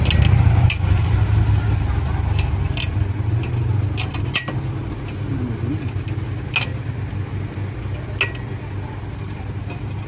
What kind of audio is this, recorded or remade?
recorded